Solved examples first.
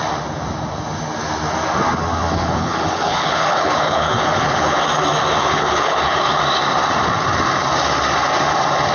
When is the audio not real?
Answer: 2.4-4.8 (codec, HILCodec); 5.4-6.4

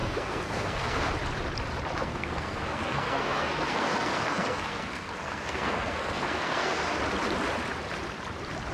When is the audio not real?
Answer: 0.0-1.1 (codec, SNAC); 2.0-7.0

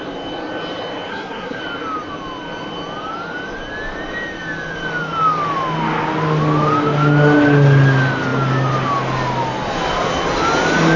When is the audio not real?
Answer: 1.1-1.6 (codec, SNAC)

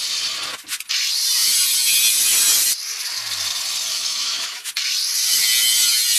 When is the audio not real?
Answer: 3.9-4.7 (autoencoder, DAC-VAE)